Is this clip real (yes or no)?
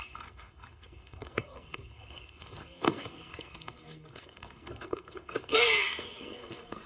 no